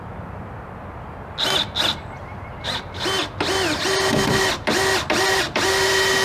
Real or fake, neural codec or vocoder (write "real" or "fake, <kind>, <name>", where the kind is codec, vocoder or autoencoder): real